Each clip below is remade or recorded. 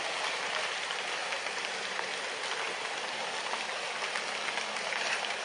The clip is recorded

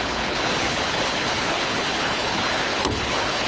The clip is remade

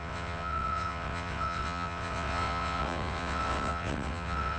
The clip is remade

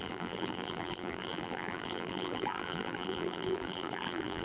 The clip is remade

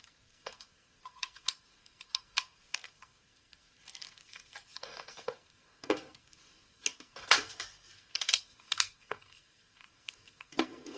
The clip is remade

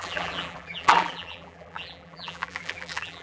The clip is remade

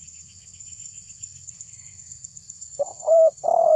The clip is remade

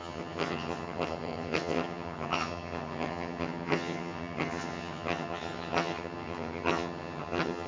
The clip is remade